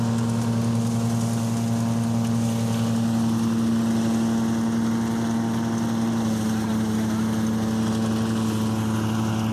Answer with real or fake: real